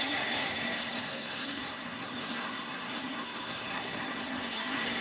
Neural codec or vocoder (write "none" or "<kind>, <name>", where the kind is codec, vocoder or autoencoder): codec, SNAC